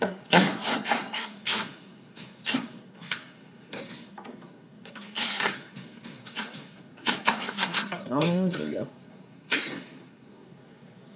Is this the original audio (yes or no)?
no